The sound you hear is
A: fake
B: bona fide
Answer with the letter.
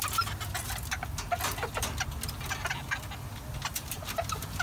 B